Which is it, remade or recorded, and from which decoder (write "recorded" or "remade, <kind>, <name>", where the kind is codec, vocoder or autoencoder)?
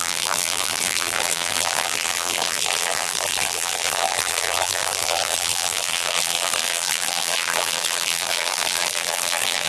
remade, vocoder, BigVGAN v2